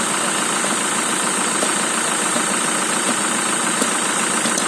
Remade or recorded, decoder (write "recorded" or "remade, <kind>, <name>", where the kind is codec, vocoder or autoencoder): recorded